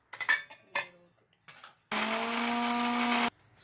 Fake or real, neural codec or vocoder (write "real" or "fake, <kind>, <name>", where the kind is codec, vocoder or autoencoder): real